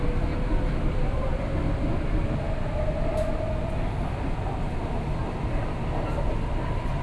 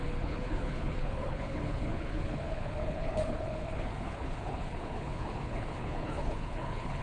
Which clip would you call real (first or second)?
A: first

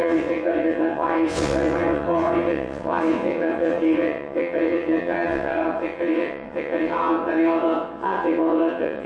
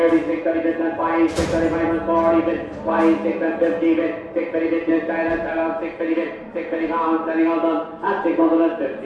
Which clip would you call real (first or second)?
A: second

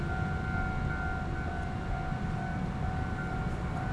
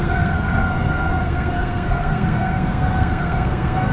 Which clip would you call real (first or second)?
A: first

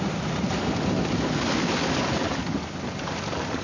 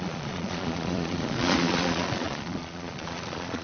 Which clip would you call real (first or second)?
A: first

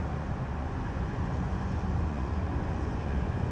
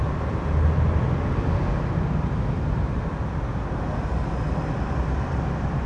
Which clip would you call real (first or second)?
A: second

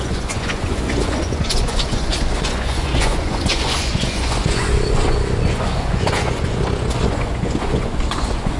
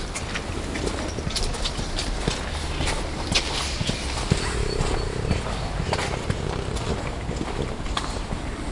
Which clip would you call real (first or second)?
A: second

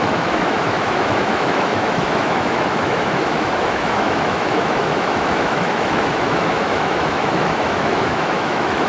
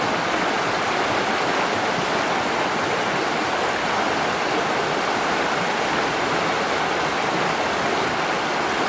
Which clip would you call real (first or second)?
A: second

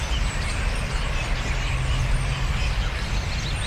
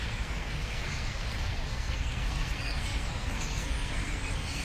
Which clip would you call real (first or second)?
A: first